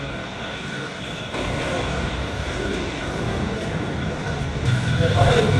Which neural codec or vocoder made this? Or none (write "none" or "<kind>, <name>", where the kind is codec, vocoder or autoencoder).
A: codec, DAC